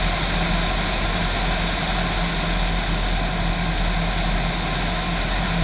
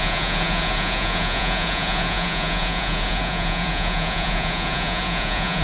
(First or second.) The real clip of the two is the first